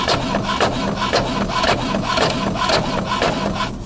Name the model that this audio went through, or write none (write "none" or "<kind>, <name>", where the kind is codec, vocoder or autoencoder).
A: none